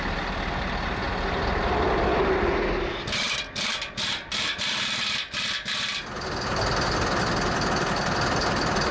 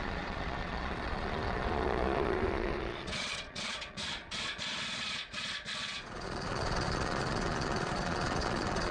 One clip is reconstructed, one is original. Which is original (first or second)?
first